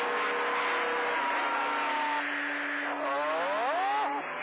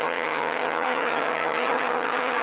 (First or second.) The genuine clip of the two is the first